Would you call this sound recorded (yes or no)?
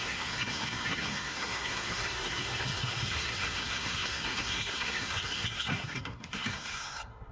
no